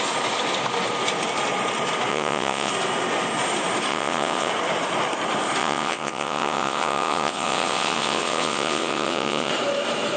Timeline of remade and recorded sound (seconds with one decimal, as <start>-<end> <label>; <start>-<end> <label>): 0.0-2.1 recorded; 2.1-2.7 remade; 2.7-3.9 recorded; 3.9-4.5 remade; 4.5-5.6 recorded; 5.6-9.5 remade; 9.5-10.2 recorded